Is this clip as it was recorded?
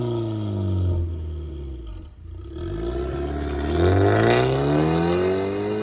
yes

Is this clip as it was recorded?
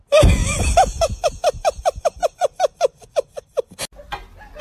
yes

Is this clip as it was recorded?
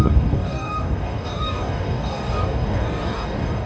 no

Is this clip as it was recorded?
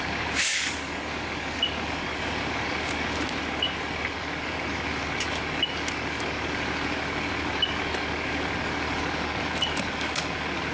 no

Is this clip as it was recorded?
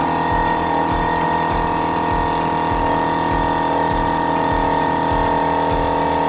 yes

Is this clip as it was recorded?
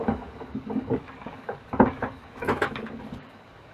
no